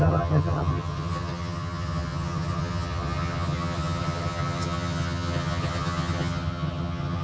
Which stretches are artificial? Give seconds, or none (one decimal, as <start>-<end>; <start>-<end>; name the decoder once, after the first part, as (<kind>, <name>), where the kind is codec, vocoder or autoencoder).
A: 0.0-7.2 (vocoder, HiFi-GAN)